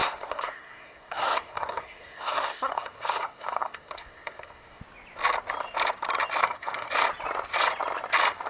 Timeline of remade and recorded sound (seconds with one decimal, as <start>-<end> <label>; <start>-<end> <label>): 0.0-4.8 remade; 4.8-6.4 recorded; 6.4-6.9 remade; 6.9-8.5 recorded